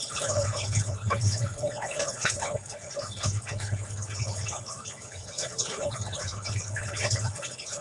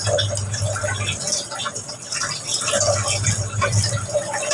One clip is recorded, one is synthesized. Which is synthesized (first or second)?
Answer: first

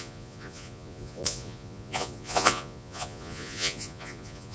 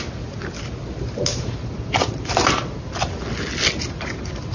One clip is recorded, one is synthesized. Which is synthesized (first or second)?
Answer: first